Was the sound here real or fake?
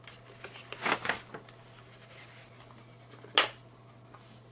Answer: real